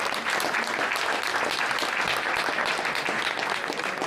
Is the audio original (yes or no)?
yes